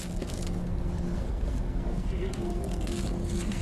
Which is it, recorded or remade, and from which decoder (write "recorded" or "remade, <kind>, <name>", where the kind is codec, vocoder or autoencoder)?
remade, codec, SNAC